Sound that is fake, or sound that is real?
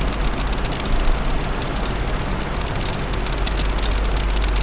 real